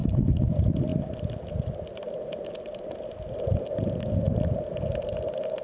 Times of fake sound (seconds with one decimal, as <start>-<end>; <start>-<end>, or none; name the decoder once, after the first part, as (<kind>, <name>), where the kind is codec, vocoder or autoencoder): 0.0-0.5 (codec, DAC)